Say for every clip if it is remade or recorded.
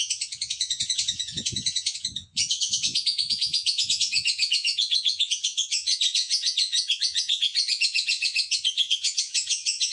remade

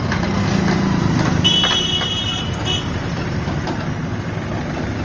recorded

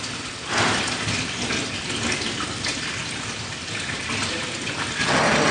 recorded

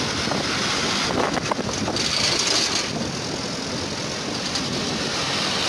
recorded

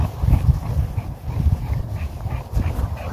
recorded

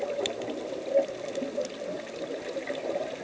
recorded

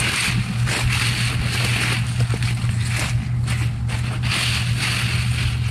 recorded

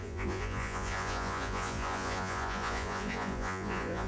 remade